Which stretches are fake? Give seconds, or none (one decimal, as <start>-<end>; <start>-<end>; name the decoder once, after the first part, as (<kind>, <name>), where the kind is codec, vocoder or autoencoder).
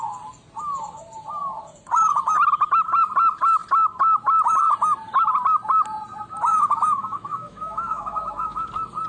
6.5-8.7 (autoencoder, DAC-VAE)